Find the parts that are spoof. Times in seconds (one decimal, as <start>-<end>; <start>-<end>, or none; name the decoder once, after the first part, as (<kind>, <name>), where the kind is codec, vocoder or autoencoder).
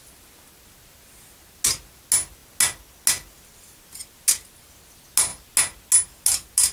none